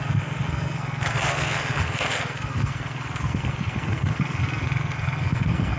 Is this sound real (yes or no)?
no